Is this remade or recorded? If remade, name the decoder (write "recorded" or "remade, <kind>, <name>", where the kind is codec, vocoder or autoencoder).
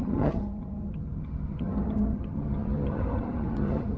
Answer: remade, vocoder, HiFi-GAN